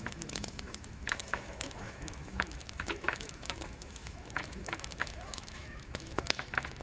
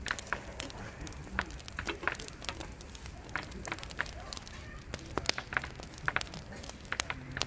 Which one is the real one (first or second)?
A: second